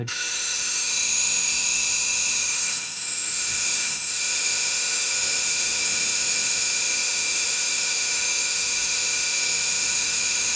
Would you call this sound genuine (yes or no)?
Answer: no